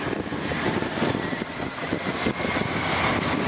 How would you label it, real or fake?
fake